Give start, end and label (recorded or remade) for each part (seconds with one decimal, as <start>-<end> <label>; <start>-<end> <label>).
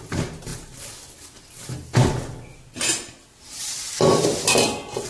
0.0-5.1 recorded